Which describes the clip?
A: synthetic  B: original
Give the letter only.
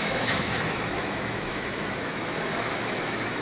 A